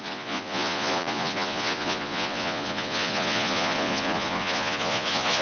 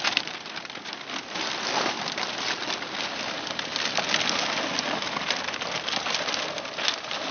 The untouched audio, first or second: second